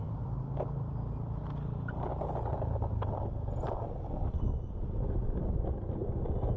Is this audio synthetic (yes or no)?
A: no